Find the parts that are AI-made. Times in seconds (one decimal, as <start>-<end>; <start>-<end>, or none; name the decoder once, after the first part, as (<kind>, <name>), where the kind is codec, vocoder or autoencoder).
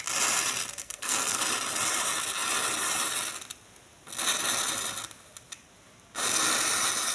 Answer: 0.8-1.4 (codec, SNAC)